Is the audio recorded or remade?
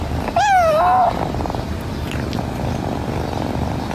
recorded